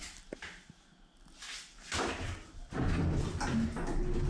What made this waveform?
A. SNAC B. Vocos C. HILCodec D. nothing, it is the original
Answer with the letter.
D